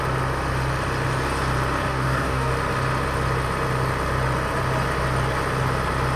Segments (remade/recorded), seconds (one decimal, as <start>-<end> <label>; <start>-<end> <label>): 0.0-1.9 recorded; 1.9-2.5 remade; 2.5-6.2 recorded